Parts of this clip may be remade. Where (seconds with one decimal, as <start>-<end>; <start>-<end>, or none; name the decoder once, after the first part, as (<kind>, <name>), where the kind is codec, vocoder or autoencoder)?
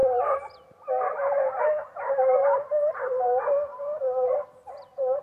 none